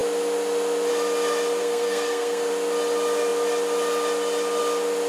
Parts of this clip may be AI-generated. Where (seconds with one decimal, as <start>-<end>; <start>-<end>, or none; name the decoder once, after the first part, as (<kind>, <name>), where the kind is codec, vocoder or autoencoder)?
1.6-2.5 (codec, SNAC)